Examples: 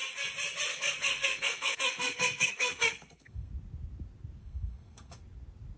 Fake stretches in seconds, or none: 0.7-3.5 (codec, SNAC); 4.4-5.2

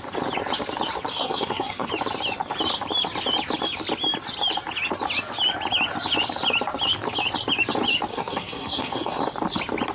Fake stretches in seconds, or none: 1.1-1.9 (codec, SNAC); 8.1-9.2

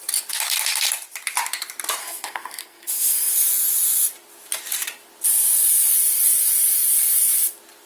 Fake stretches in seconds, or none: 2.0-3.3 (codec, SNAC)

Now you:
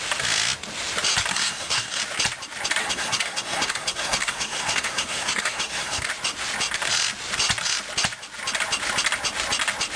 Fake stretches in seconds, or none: 1.3-2.0 (codec, SNAC); 2.8-6.1

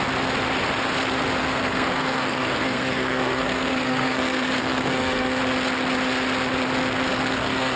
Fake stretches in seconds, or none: 1.4-5.4 (codec, SNAC); 7.1-7.8

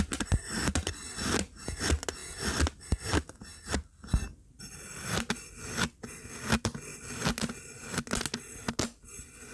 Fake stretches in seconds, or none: none

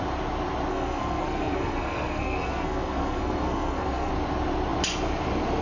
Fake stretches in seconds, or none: 0.7-4.1 (codec, SNAC)